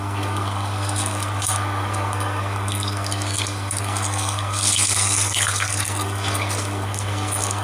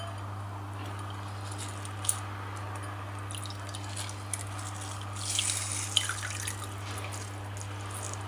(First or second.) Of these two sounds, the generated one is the first